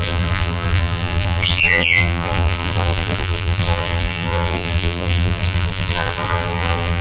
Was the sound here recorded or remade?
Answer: remade